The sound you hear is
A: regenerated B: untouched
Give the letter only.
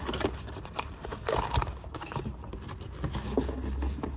B